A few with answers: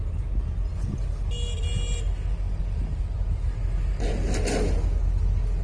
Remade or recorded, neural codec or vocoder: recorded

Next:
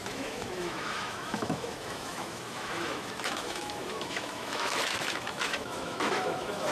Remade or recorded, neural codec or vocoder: remade, autoencoder, DAC-VAE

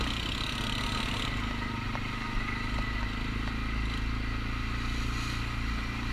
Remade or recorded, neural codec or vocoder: recorded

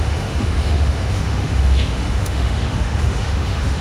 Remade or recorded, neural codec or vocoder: remade, autoencoder, DAC-VAE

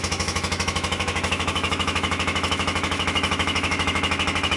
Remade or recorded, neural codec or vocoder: remade, autoencoder, DAC-VAE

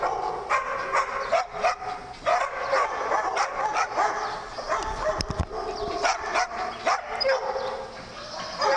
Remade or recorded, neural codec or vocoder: recorded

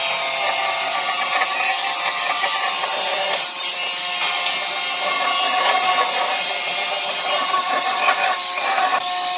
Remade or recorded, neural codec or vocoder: recorded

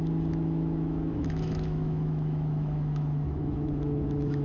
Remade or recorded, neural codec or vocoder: remade, autoencoder, DAC-VAE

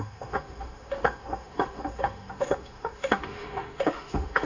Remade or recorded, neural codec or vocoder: remade, autoencoder, DAC-VAE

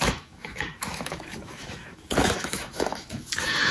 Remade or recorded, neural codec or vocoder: remade, autoencoder, DAC-VAE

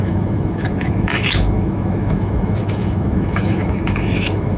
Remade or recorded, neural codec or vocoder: remade, autoencoder, DAC-VAE